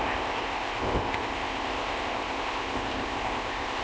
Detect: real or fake fake